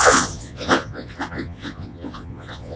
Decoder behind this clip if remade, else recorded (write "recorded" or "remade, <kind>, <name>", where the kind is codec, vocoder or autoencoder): remade, vocoder, Vocos